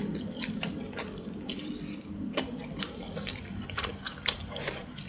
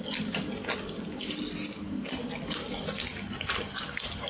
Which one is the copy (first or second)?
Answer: first